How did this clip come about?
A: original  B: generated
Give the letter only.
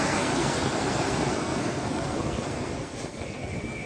B